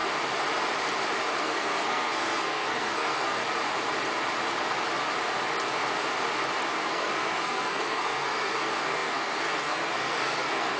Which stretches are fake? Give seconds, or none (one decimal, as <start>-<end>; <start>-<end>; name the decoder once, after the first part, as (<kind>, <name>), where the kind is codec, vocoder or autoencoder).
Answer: 1.4-3.4 (codec, SNAC); 6.7-10.8